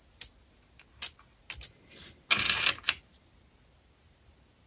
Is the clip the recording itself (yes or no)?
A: yes